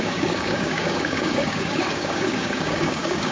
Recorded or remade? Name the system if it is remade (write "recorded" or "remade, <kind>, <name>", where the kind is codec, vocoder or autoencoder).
remade, codec, DAC